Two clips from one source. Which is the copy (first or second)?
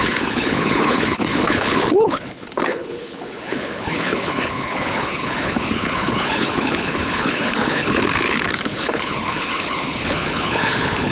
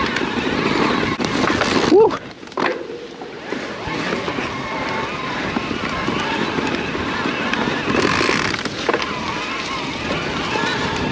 first